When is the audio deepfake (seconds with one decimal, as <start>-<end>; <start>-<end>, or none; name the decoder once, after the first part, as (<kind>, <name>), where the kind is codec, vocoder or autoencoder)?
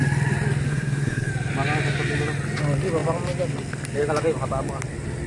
0.7-1.3 (codec, SNAC)